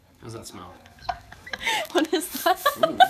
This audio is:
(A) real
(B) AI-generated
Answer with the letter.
B